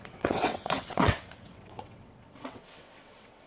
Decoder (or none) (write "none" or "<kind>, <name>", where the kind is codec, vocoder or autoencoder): vocoder, WaveNeXt